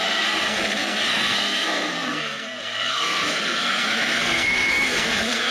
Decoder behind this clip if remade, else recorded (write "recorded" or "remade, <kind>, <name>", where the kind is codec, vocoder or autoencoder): remade, codec, SNAC